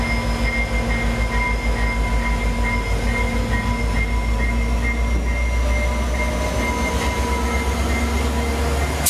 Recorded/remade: recorded